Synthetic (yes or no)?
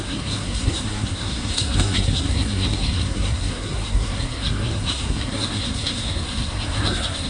yes